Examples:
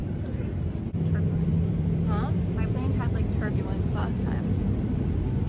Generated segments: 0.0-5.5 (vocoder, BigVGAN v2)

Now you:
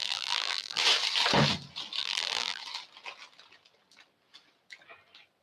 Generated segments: 0.0-0.8 (vocoder, BigVGAN v2); 2.0-2.6

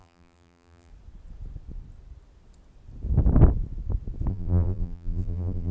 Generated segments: 0.0-0.9 (vocoder, BigVGAN v2); 4.3-5.7

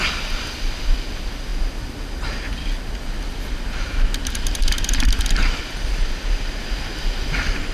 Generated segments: none

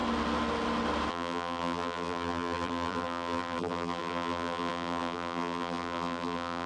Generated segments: 1.1-6.7 (vocoder, BigVGAN v2)

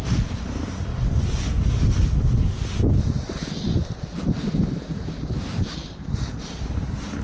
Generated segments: 5.8-6.4 (vocoder, BigVGAN v2)